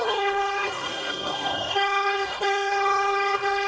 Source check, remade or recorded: remade